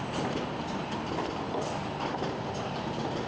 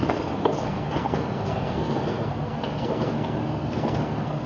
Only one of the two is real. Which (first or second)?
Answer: first